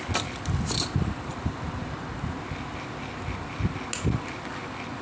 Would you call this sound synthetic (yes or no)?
no